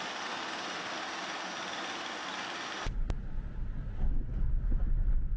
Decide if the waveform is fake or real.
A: real